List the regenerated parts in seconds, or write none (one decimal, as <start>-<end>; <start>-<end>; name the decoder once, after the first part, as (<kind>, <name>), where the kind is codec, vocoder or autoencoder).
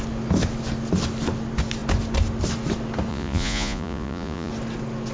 3.1-4.5 (vocoder, Vocos)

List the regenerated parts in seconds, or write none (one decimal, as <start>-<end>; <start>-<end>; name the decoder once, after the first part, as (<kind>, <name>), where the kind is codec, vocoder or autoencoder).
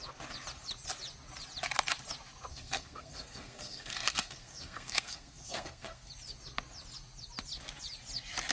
2.5-6.1 (codec, SNAC)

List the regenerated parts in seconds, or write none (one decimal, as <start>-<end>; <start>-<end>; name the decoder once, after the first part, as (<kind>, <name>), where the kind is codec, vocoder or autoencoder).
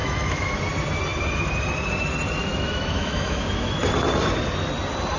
0.0-0.6 (autoencoder, DAC-VAE); 2.5-3.8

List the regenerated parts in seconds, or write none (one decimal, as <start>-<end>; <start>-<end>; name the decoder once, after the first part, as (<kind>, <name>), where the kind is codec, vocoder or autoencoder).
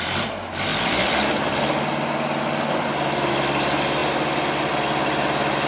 none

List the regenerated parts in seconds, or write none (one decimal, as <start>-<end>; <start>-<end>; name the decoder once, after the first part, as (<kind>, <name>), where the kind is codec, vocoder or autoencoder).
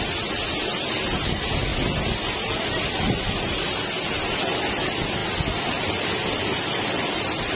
none